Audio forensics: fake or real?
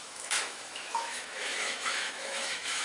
fake